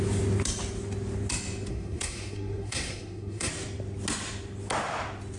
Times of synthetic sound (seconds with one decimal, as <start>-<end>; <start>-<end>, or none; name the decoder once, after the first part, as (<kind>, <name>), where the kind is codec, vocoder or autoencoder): 1.7-3.5 (codec, SNAC)